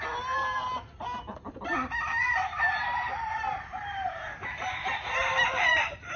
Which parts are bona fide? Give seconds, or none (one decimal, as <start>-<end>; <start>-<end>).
0.0-2.3